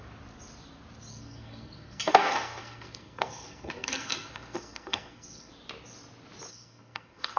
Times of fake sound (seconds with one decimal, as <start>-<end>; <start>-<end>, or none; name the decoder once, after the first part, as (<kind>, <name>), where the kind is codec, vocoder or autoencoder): 1.1-5.5 (codec, SNAC); 6.5-7.4